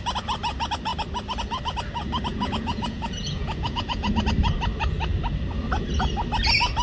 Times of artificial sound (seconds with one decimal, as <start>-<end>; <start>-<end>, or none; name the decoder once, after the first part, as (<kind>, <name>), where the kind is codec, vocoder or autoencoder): 2.3-4.1 (vocoder, Vocos)